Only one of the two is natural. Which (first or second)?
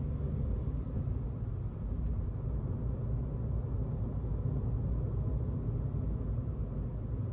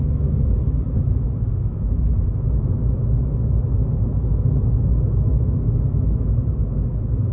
first